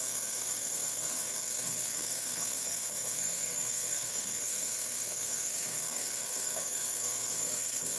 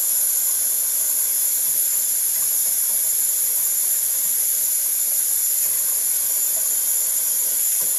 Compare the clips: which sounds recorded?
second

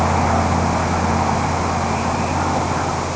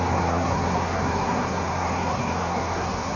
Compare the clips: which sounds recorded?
first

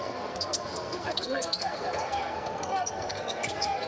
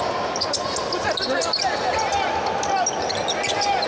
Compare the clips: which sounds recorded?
second